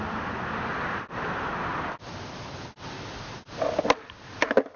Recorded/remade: recorded